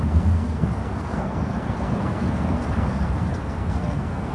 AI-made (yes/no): yes